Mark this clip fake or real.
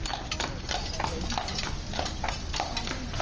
real